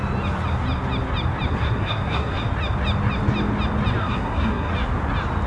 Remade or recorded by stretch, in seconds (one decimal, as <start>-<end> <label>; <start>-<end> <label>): 0.0-1.5 recorded; 1.5-2.4 remade; 2.4-4.0 recorded; 4.0-4.7 remade; 4.7-5.5 recorded

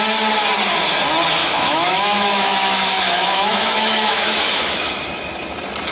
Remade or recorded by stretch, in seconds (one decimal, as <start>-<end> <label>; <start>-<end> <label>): 0.0-1.4 recorded; 1.4-4.9 remade; 4.9-5.9 recorded

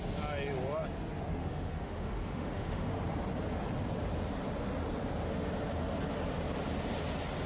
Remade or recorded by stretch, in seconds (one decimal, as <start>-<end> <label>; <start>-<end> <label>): 0.0-1.4 recorded; 1.4-2.9 remade; 2.9-7.5 recorded

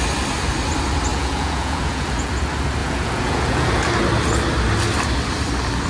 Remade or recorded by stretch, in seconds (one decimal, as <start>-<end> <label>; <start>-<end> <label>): 0.0-1.1 recorded; 1.1-2.3 remade; 2.3-2.8 recorded; 2.8-3.7 remade; 3.7-5.9 recorded

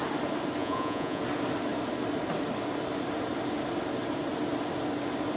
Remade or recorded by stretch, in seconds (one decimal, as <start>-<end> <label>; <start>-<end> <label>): 0.0-0.6 recorded; 0.6-1.2 remade; 1.2-5.4 recorded

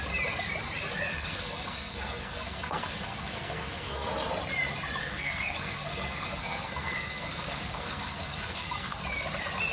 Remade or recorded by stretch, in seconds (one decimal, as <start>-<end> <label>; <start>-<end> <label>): 0.0-1.1 recorded; 1.1-4.1 remade; 4.1-5.0 recorded; 5.0-9.0 remade; 9.0-9.7 recorded

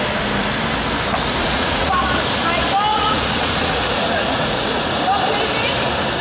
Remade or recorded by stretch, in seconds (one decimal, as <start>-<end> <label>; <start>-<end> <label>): 0.0-1.4 recorded; 1.4-1.9 remade; 1.9-2.9 recorded; 2.9-5.0 remade; 5.0-6.2 recorded

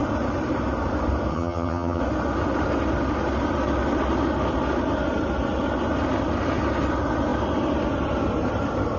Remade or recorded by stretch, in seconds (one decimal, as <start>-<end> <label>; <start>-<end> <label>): 0.0-1.3 recorded; 1.3-2.0 remade; 2.0-9.0 recorded